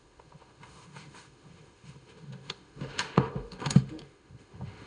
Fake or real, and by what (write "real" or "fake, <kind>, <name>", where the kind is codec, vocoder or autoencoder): fake, autoencoder, DAC-VAE